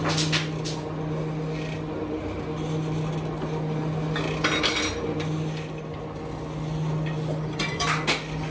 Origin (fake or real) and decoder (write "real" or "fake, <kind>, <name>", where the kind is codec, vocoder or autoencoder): real